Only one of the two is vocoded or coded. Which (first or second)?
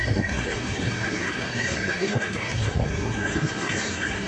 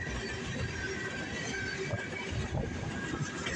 first